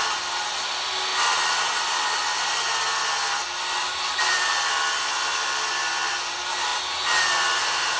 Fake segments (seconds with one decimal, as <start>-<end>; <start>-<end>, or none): none